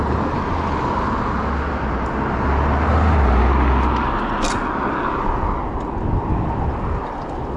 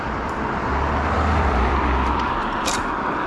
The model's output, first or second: second